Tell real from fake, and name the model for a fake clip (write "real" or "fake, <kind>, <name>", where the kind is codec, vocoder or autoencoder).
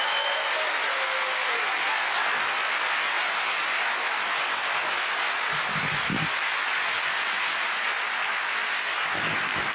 real